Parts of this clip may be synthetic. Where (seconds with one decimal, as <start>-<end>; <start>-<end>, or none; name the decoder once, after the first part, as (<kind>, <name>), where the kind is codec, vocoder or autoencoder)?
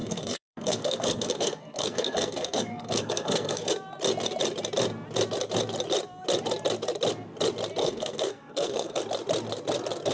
0.0-3.7 (codec, SNAC); 7.8-9.0